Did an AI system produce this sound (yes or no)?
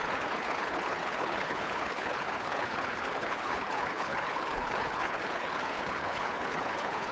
yes